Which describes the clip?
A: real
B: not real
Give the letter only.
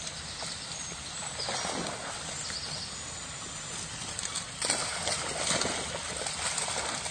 A